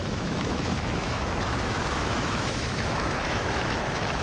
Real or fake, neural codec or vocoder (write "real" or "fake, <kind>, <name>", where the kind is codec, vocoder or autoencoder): fake, autoencoder, DAC-VAE